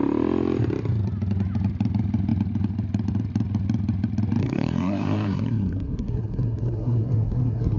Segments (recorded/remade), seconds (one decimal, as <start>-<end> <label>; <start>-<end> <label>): 0.0-4.4 recorded; 4.4-7.8 remade